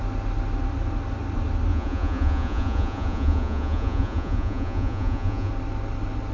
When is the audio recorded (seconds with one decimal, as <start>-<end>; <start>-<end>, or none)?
0.0-1.7; 5.5-6.3